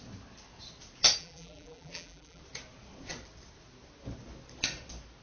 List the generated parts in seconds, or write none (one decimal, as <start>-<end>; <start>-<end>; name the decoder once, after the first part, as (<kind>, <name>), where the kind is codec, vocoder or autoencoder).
1.2-2.4 (vocoder, BigVGAN v2)